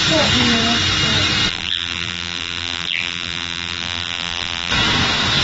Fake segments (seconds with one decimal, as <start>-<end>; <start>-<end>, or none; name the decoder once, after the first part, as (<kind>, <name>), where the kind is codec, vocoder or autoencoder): 1.5-4.7 (vocoder, BigVGAN v2)